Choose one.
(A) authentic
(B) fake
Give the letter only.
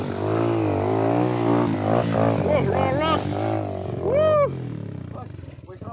A